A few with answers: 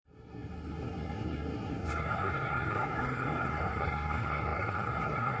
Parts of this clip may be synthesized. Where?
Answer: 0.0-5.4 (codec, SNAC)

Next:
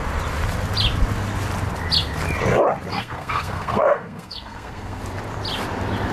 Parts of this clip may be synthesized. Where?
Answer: 2.9-5.0 (codec, SNAC)

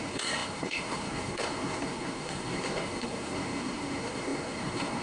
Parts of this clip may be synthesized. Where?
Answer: 0.0-5.0 (codec, SNAC)

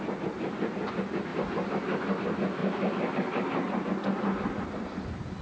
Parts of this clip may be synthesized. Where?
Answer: none

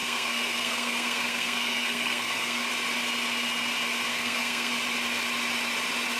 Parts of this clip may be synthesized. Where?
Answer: 0.0-2.7 (codec, SNAC); 4.1-4.7

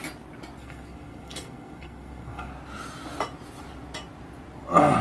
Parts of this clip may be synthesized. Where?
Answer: 0.6-2.5 (codec, SNAC)

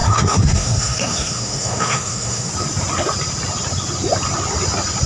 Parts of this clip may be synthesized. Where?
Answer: 0.0-2.5 (codec, SNAC)